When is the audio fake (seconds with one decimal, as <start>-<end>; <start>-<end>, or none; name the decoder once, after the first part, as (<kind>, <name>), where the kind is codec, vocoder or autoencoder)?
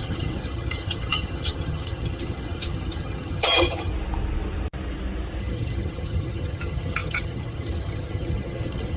0.0-3.9 (vocoder, HiFi-GAN); 5.4-9.0